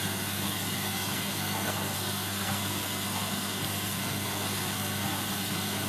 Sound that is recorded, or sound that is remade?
remade